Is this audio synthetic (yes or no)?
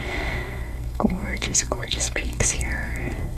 yes